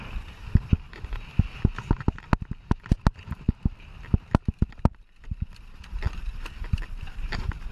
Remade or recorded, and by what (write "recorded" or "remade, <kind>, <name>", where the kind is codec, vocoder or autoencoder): recorded